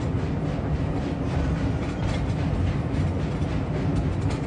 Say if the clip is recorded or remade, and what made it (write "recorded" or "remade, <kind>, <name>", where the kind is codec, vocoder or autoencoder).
recorded